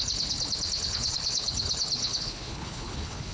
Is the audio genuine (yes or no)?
no